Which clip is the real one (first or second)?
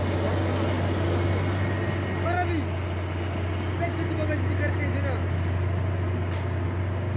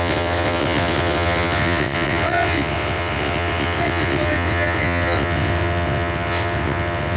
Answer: first